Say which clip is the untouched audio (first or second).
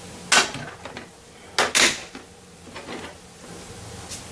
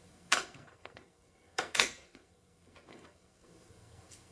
first